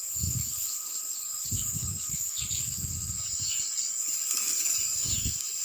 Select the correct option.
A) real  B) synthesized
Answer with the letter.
B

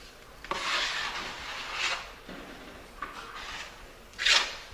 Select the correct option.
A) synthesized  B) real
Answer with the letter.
B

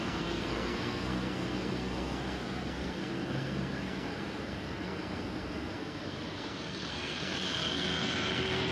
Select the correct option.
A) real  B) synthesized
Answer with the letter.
B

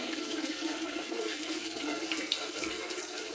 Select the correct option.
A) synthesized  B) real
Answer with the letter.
A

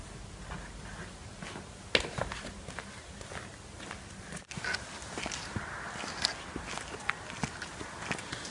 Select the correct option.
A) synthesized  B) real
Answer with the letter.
B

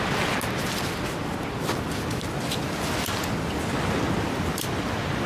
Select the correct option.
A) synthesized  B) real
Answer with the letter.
B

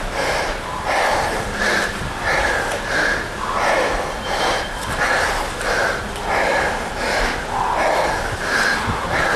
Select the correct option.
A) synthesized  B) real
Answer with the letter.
B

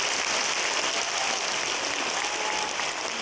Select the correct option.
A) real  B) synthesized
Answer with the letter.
A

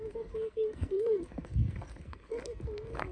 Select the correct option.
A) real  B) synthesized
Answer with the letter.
B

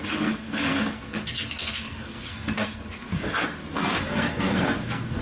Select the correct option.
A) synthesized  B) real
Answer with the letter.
A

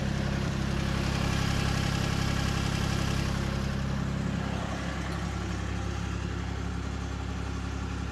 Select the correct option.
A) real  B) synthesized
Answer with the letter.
A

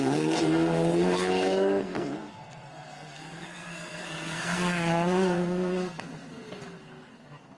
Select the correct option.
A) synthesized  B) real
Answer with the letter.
A